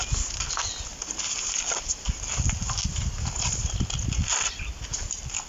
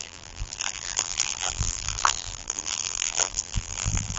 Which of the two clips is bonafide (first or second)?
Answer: first